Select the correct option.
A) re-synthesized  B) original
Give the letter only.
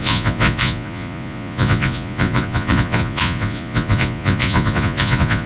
A